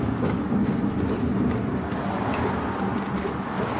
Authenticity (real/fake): real